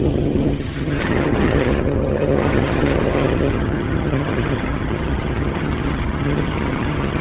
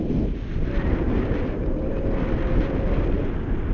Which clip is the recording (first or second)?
second